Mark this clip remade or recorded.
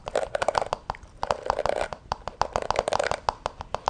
recorded